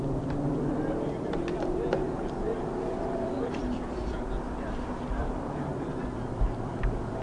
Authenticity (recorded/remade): remade